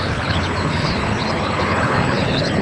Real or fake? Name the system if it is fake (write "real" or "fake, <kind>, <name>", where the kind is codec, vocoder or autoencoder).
fake, codec, HILCodec